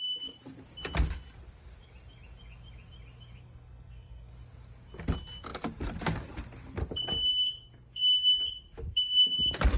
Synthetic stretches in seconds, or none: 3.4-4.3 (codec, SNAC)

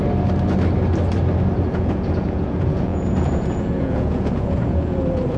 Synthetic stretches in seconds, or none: 1.7-5.4 (vocoder, Vocos)

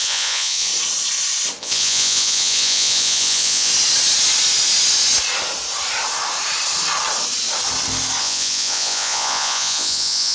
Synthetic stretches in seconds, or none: 0.0-0.7 (vocoder, Vocos); 1.6-3.7; 8.2-10.3

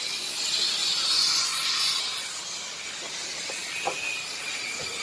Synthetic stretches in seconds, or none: 0.8-2.0 (vocoder, Vocos)